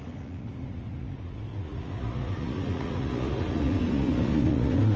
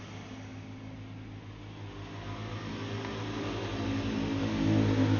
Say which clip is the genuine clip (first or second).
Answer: second